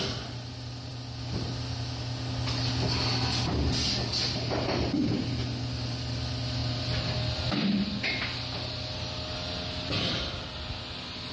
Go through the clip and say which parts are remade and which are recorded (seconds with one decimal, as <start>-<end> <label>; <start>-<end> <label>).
0.0-11.3 recorded

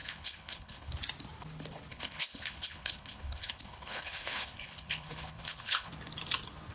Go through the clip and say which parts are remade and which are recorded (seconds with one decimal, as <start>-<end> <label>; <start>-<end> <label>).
0.0-0.9 remade; 0.9-1.9 recorded; 1.9-5.9 remade; 5.9-6.7 recorded

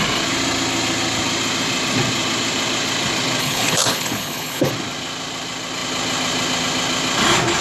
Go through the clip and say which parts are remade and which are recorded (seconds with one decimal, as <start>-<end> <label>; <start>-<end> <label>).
0.0-3.4 recorded; 3.4-4.7 remade; 4.7-7.6 recorded

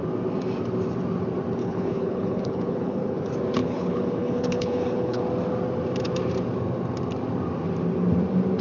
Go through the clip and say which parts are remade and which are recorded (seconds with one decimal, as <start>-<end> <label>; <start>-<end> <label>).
0.0-1.6 recorded; 1.6-3.2 remade; 3.2-3.6 recorded; 3.6-5.2 remade; 5.2-8.6 recorded